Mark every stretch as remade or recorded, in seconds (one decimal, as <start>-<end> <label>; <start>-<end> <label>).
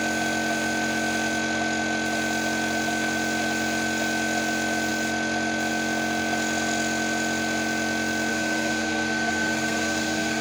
0.0-8.3 recorded; 8.3-10.4 remade